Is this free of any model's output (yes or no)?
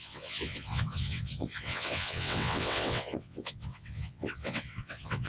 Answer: no